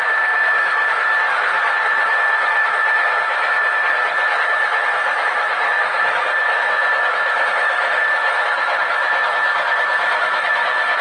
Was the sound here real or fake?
fake